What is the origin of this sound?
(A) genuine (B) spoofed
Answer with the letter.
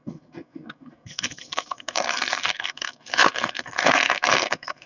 B